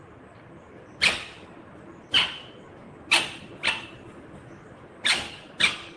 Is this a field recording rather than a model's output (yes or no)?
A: yes